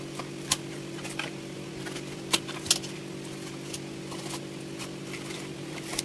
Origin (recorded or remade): recorded